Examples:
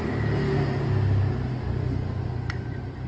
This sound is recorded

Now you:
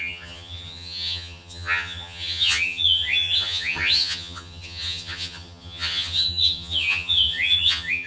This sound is remade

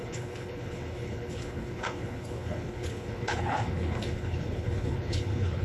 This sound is remade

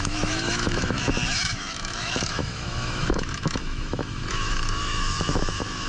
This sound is remade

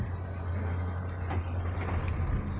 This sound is recorded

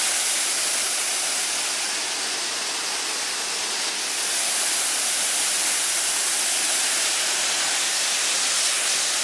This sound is recorded